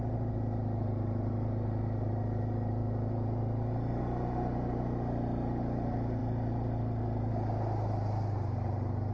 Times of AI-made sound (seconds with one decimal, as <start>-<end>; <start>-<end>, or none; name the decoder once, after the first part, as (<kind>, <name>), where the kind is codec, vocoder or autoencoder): none